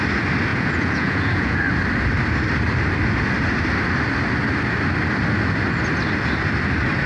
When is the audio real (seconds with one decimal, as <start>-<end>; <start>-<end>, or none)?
0.0-0.5; 1.6-7.1